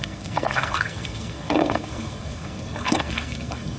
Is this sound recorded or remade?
remade